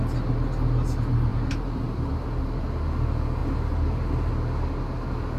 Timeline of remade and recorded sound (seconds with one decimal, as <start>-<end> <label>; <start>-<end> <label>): 0.0-1.3 recorded; 1.3-2.4 remade; 2.4-3.4 recorded; 3.4-4.3 remade; 4.3-5.4 recorded

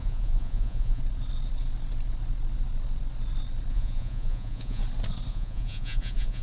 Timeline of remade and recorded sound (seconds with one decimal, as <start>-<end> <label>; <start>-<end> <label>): 0.0-1.0 remade; 1.0-3.7 recorded; 3.7-4.8 remade; 4.8-5.3 recorded; 5.3-6.4 remade

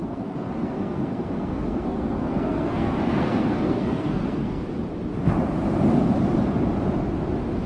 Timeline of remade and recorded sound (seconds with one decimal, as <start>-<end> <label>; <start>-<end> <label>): 0.0-4.6 remade; 4.6-7.7 recorded

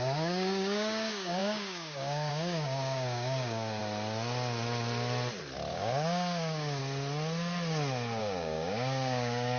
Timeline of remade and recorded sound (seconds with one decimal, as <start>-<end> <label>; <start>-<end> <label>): 0.0-3.8 remade; 3.8-5.7 recorded; 5.7-6.8 remade; 6.8-8.2 recorded; 8.2-9.6 remade

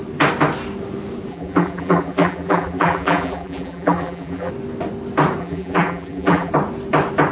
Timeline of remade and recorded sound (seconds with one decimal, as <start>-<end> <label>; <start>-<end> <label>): 0.0-1.3 recorded; 1.3-4.5 remade; 4.5-5.4 recorded; 5.4-6.5 remade; 6.5-7.3 recorded